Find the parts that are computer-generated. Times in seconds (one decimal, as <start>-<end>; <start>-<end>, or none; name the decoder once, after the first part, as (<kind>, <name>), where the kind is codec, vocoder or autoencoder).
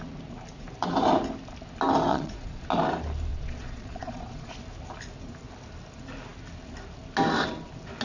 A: 2.1-2.6 (vocoder, Vocos); 3.3-4.5